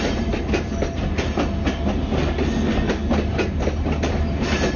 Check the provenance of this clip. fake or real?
real